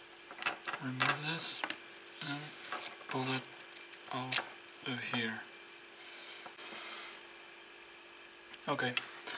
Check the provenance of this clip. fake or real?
real